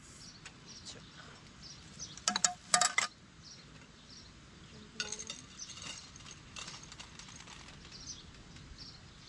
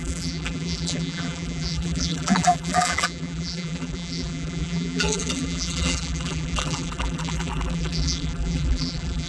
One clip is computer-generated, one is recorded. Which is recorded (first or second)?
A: first